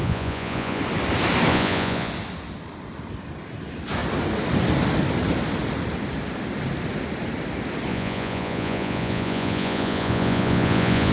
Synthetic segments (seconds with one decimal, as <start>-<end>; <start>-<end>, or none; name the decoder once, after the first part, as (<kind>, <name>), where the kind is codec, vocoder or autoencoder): 0.0-0.8 (vocoder, Vocos); 1.5-2.1; 7.9-11.1